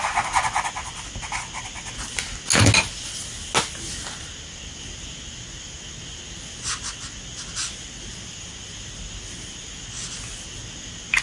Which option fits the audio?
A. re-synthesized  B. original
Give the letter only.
B